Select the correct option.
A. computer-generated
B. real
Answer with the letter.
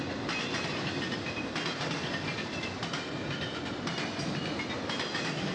B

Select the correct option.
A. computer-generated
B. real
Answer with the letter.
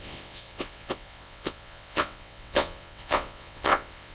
A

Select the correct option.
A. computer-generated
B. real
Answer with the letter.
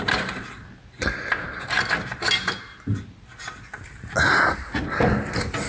B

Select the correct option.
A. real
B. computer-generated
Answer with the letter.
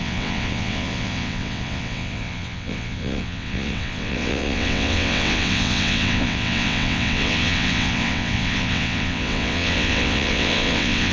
B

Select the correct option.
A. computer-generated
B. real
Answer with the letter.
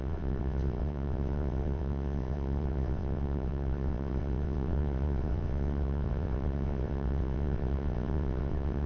A